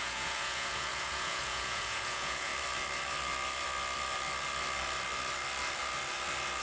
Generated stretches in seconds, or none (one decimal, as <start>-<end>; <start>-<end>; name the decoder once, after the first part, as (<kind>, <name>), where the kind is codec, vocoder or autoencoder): 0.0-2.5 (vocoder, Vocos)